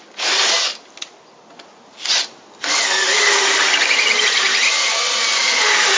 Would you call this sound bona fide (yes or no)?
yes